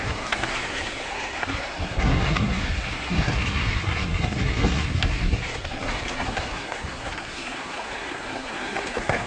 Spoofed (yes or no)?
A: yes